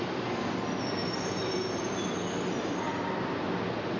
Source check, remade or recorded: recorded